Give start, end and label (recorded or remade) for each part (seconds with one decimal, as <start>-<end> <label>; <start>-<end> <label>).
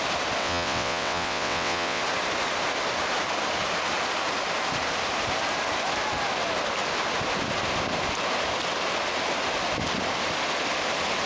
0.0-0.4 recorded; 0.4-2.0 remade; 2.0-11.3 recorded